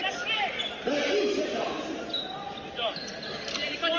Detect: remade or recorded recorded